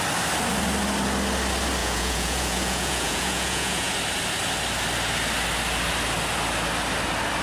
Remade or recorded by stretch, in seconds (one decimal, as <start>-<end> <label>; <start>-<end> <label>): 0.0-1.8 recorded; 1.8-3.9 remade; 3.9-7.4 recorded